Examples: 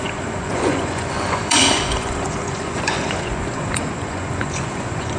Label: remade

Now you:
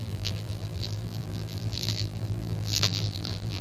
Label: remade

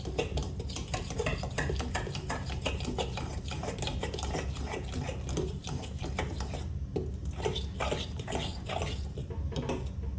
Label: recorded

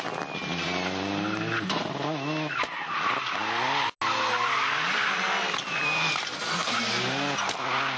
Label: recorded